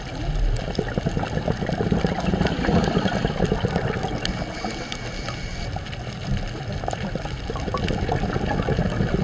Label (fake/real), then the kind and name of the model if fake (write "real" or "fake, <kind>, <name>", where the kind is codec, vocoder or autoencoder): real